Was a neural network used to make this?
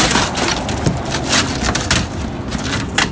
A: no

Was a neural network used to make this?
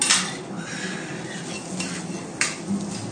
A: no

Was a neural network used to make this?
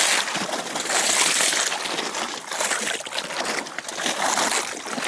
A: no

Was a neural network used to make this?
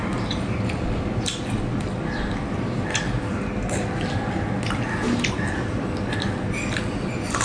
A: no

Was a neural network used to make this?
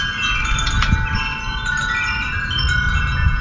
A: no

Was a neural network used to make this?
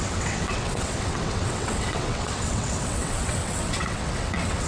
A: yes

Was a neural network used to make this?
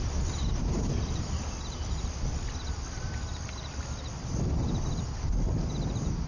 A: no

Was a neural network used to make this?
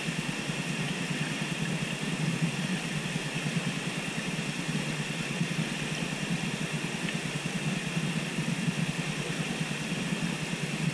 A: no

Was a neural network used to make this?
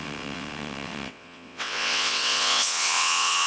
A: yes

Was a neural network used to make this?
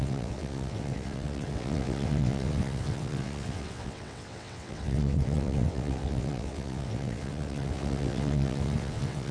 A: yes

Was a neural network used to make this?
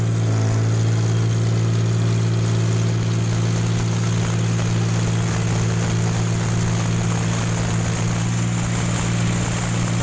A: no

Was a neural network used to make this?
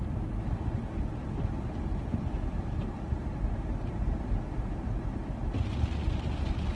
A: no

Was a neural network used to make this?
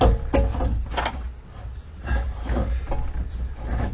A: no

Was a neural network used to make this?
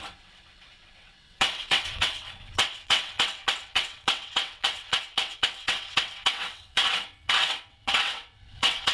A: yes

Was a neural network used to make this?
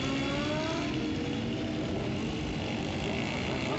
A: no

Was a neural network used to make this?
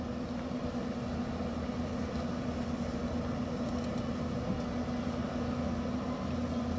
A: no